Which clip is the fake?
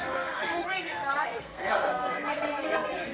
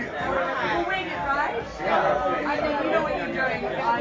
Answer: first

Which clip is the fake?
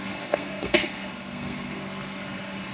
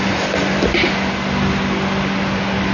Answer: first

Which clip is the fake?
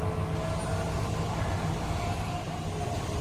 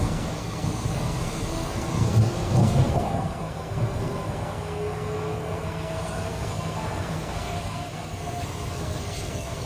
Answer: second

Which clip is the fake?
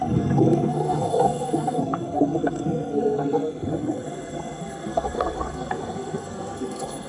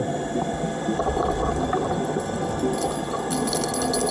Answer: first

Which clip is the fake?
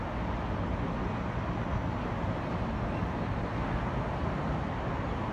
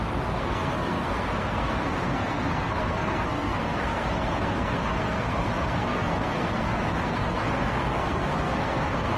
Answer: second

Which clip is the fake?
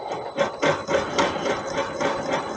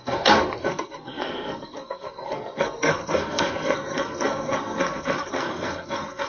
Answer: second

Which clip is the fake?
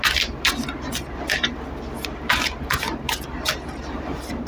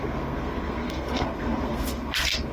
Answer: second